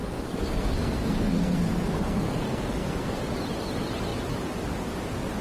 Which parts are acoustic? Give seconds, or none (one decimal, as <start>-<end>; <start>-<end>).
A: 3.2-5.4